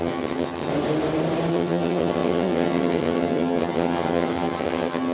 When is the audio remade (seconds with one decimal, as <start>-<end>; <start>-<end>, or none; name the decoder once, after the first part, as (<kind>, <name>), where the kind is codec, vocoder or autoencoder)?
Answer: 0.0-0.7 (vocoder, HiFi-GAN); 1.5-5.1